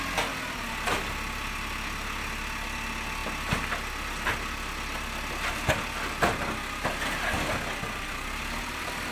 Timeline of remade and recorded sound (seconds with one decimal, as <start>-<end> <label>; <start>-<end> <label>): 0.0-9.1 recorded